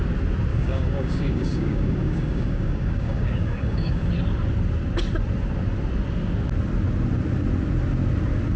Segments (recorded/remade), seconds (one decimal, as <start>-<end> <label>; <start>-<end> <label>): 0.0-0.5 recorded; 0.5-4.1 remade; 4.1-8.6 recorded